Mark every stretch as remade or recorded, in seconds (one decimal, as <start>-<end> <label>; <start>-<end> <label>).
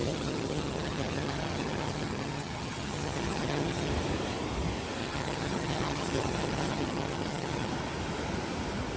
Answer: 0.0-3.9 remade; 3.9-5.0 recorded; 5.0-7.7 remade; 7.7-9.0 recorded